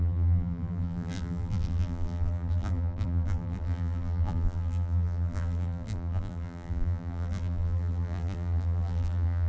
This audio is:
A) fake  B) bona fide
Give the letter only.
A